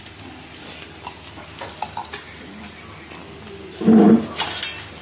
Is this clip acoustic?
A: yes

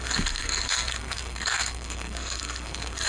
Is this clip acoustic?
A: no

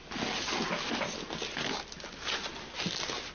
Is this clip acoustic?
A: yes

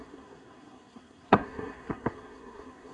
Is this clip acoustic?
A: no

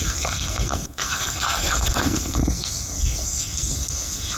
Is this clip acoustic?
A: no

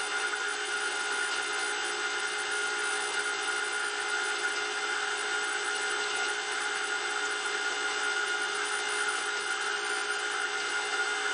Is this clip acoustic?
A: yes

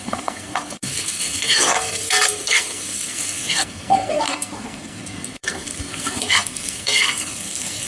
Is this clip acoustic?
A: no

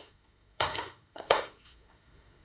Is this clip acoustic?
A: no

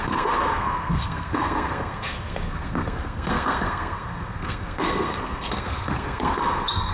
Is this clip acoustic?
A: no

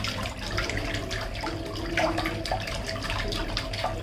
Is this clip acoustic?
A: yes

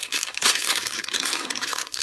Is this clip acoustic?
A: no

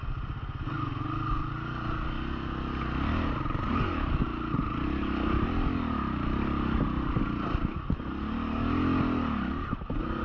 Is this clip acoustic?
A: yes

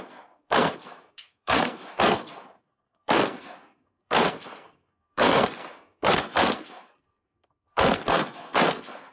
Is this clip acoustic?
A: no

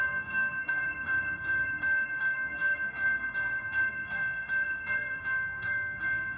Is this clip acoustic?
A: no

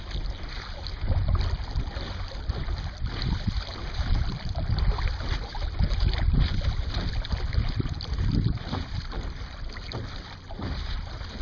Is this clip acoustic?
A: yes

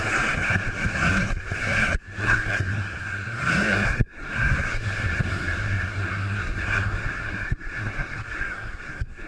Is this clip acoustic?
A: no